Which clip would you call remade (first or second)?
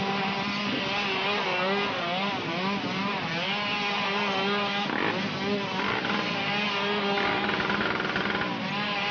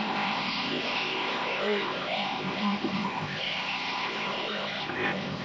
second